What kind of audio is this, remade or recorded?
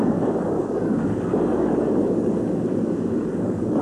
remade